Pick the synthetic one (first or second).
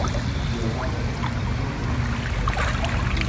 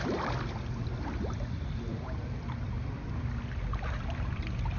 second